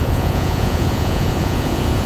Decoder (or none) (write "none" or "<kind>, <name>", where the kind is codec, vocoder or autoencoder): vocoder, Vocos